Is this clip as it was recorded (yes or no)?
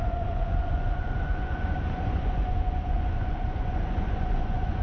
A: no